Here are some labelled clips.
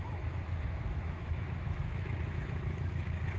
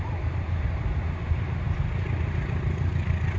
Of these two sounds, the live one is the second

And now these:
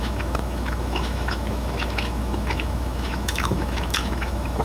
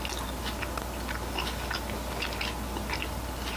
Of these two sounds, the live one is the second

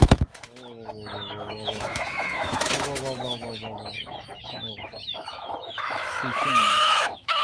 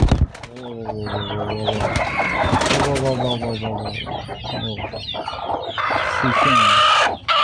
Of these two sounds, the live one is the second